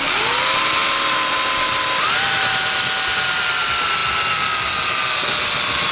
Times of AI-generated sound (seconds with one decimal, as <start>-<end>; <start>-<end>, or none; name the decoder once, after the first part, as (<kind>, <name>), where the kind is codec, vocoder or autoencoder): none